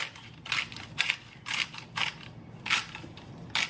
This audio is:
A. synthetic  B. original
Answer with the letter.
B